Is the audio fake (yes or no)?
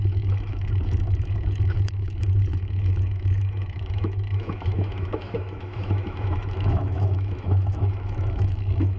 yes